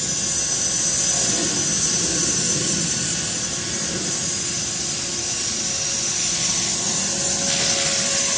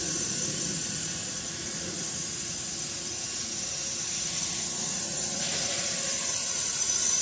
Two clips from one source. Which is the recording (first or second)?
first